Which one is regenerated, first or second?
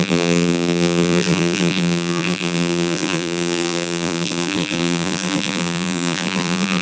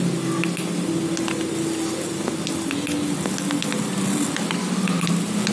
first